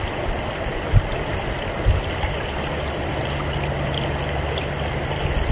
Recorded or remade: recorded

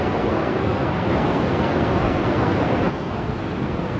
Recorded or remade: remade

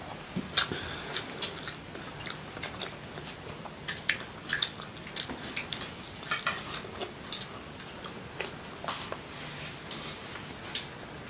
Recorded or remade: recorded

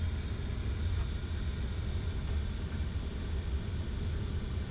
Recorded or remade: recorded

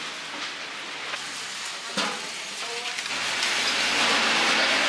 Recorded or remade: recorded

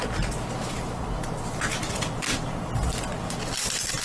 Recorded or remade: recorded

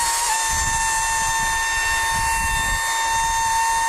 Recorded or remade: recorded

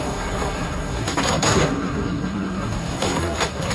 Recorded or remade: remade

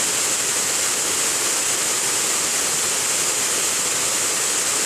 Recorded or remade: recorded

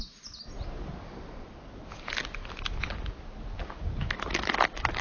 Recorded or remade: recorded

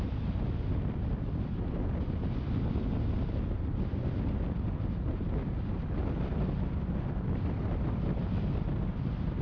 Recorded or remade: recorded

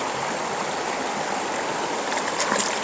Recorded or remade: recorded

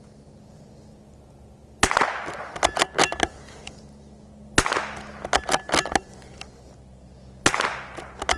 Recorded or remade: recorded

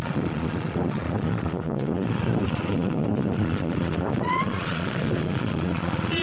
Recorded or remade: remade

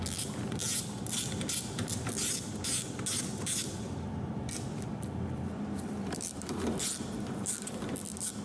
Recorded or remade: remade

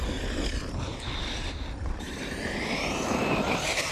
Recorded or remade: recorded